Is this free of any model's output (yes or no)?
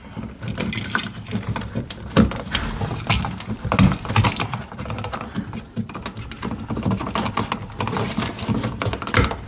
yes